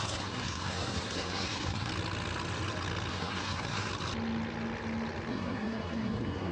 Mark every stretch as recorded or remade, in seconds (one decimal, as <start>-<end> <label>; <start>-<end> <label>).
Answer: 0.0-1.9 remade; 1.9-3.1 recorded; 3.1-3.9 remade; 3.9-5.3 recorded; 5.3-6.5 remade